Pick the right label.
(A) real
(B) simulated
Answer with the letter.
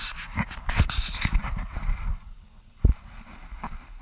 A